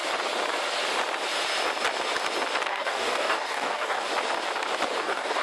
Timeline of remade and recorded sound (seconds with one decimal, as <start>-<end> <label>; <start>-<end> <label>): 0.0-2.7 recorded; 2.7-4.1 remade; 4.1-5.0 recorded; 5.0-5.4 remade